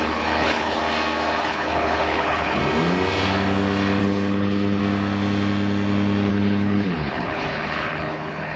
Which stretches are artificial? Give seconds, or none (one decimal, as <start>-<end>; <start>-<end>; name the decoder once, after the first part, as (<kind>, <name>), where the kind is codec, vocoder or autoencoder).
0.0-0.8 (codec, HILCodec); 1.4-2.6; 4.0-4.8; 6.3-8.6